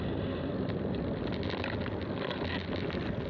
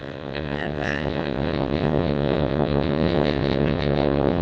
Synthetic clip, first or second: second